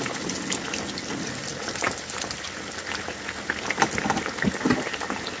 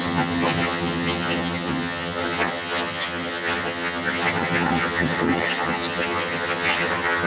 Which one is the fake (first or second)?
second